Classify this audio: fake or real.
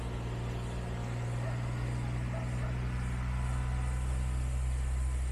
real